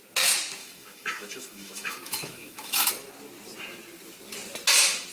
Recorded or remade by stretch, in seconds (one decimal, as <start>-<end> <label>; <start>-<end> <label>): 0.0-0.6 recorded; 0.6-2.9 remade; 2.9-5.1 recorded